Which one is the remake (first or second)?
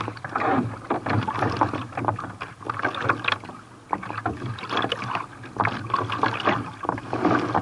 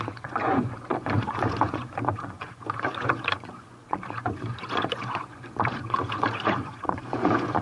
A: second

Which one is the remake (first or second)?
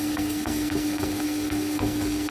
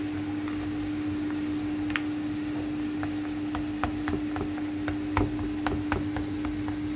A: first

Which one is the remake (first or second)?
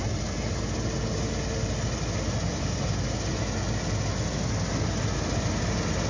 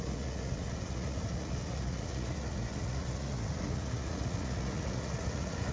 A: second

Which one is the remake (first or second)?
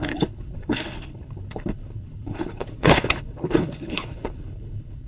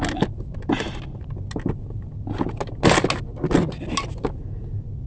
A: first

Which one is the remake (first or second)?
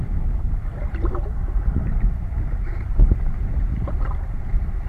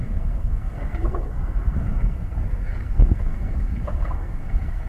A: second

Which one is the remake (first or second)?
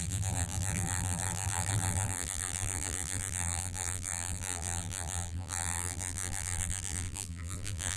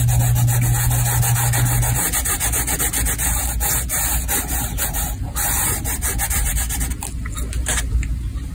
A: first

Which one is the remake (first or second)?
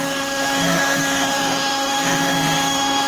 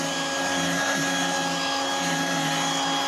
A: first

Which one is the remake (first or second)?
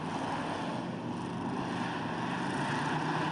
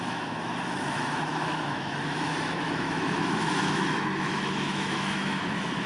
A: second